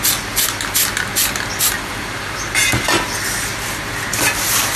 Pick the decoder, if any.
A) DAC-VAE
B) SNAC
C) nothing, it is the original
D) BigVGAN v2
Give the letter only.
C